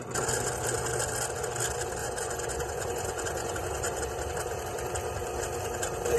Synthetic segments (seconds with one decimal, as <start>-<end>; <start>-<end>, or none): 2.0-4.0